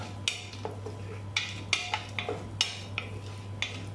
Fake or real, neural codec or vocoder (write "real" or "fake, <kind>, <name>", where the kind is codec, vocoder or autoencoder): real